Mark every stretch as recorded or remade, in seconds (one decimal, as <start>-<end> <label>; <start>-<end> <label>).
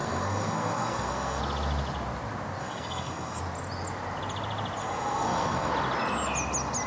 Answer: 0.0-1.4 remade; 1.4-2.6 recorded; 2.6-3.4 remade; 3.4-4.8 recorded; 4.8-5.7 remade; 5.7-6.9 recorded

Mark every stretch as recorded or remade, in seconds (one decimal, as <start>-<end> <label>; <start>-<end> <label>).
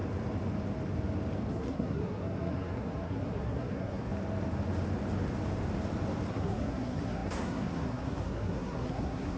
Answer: 0.0-1.5 recorded; 1.5-4.1 remade; 4.1-6.3 recorded; 6.3-9.4 remade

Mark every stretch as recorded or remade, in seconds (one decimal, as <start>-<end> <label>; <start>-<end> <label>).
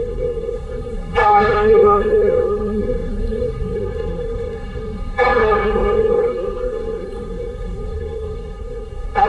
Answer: 0.0-9.3 remade